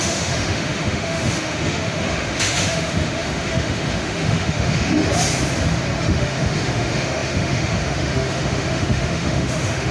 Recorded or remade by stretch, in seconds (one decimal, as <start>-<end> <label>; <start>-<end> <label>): 0.0-5.1 remade; 5.1-6.0 recorded; 6.0-9.9 remade